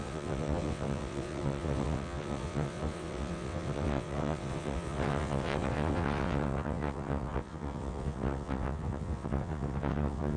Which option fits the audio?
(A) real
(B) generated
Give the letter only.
B